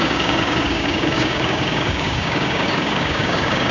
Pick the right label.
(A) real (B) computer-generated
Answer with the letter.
B